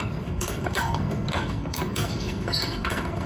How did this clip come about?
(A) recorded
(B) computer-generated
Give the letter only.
B